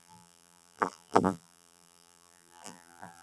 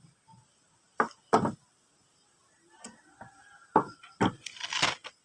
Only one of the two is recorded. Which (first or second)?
second